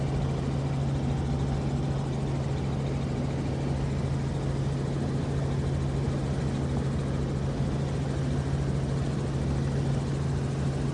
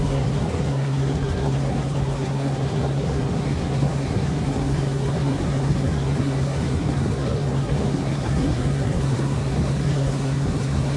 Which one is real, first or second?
first